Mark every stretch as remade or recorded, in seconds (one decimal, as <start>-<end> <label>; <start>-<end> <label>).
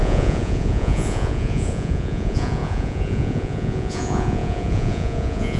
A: 0.0-5.6 remade